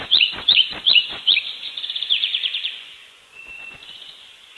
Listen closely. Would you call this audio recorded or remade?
remade